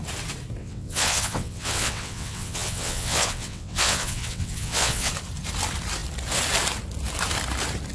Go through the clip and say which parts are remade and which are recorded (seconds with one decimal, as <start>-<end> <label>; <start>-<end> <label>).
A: 0.0-0.6 recorded; 0.6-5.1 remade; 5.1-7.9 recorded